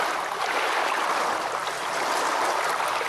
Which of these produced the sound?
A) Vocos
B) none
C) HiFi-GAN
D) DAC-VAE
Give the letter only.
B